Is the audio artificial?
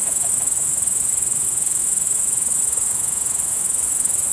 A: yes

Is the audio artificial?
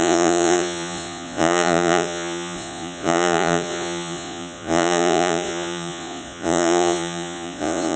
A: yes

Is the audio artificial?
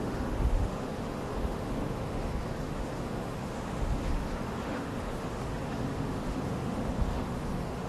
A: yes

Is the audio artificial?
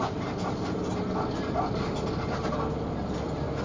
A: no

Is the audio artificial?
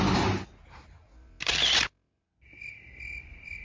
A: no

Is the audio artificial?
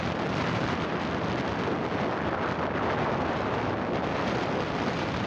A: no